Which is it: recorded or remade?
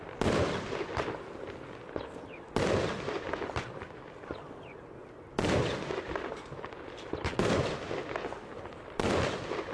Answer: recorded